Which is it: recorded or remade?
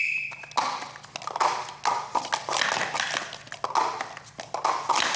recorded